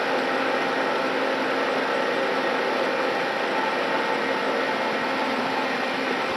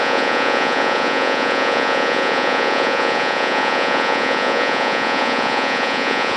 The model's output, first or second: second